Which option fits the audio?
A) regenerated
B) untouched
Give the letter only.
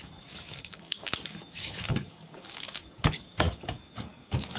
A